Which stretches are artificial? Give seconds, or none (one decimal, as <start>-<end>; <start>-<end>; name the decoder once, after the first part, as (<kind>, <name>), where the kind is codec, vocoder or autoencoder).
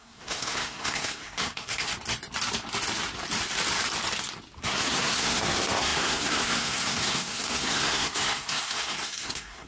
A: 0.0-1.9 (codec, SNAC); 4.6-9.7